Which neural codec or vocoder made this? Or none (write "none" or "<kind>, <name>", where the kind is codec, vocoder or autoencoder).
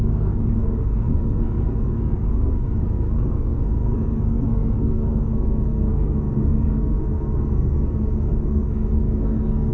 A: codec, SNAC